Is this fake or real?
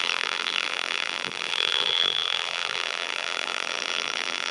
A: fake